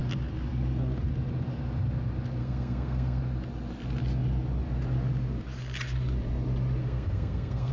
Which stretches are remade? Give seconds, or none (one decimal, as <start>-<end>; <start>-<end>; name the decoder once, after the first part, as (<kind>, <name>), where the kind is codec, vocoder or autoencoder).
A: 2.4-3.2 (codec, SNAC); 6.8-7.7